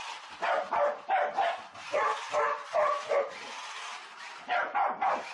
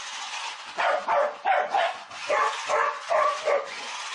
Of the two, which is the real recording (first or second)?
first